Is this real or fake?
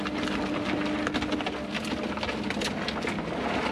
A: real